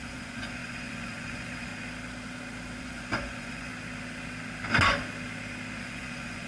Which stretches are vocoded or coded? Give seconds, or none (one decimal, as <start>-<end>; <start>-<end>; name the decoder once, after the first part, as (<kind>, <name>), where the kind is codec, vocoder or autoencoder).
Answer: 0.0-1.7 (vocoder, Vocos); 2.8-3.7; 5.8-6.5